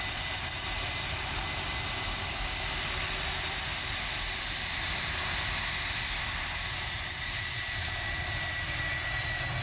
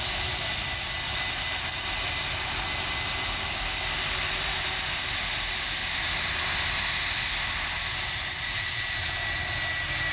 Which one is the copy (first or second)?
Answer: first